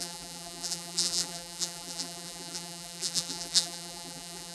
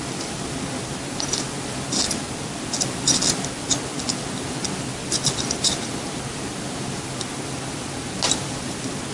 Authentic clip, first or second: second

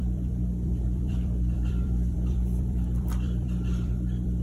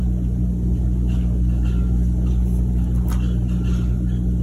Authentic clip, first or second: second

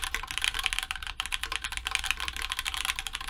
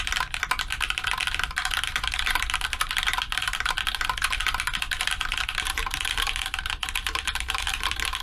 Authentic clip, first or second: first